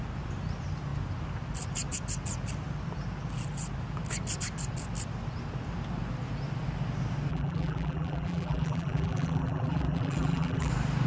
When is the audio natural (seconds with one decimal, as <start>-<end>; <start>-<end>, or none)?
0.0-7.3; 10.7-11.1